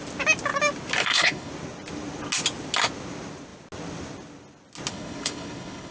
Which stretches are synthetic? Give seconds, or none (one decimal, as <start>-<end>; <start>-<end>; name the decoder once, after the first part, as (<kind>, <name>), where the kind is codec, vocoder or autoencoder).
1.0-1.5 (codec, HILCodec); 4.9-5.9